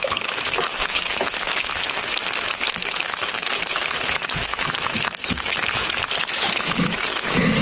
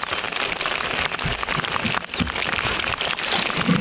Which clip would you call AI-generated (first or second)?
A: first